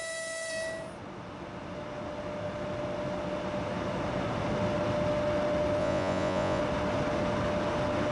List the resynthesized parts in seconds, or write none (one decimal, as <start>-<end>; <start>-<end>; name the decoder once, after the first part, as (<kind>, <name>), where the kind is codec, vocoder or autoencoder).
5.8-6.6 (vocoder, Vocos)

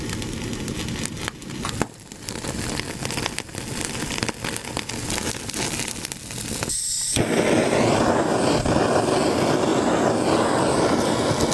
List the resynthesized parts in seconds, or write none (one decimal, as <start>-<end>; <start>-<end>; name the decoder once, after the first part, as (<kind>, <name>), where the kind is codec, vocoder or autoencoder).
none

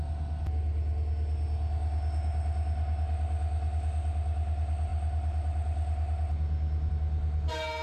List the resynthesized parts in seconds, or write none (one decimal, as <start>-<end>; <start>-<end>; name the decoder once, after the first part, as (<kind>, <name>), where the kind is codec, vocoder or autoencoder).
none

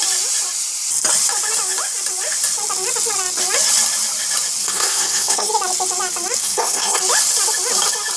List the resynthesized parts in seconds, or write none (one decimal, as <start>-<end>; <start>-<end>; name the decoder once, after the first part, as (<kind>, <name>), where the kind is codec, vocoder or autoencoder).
4.6-5.5 (codec, SNAC); 6.4-7.0

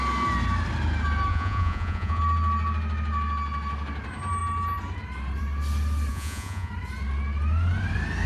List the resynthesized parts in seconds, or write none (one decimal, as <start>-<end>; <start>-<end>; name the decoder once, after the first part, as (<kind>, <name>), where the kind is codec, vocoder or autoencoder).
1.3-2.2 (vocoder, Vocos); 6.1-6.7

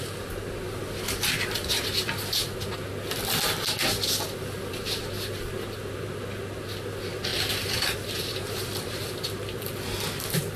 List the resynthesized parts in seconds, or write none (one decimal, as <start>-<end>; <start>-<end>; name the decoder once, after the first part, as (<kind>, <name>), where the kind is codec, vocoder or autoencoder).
7.3-9.6 (vocoder, BigVGAN v2)

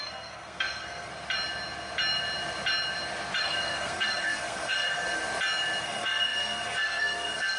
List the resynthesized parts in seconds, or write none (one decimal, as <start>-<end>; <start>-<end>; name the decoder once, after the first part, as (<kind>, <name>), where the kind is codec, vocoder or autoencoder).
0.0-1.1 (codec, SNAC); 3.4-5.2; 5.8-7.6